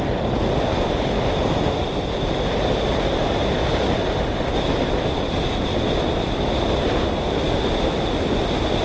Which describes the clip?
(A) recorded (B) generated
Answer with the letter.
A